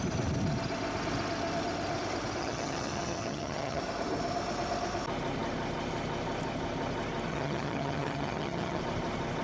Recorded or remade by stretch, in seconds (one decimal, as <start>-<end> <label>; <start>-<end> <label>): 0.0-2.4 recorded; 2.4-3.8 remade; 3.8-7.3 recorded; 7.3-8.8 remade; 8.8-9.4 recorded